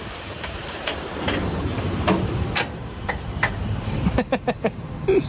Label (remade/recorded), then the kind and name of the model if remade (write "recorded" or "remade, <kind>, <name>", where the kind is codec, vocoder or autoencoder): remade, vocoder, BigVGAN v2